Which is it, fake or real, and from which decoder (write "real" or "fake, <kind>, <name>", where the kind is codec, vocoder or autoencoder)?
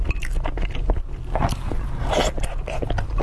real